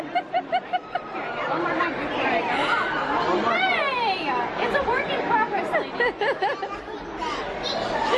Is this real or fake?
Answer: real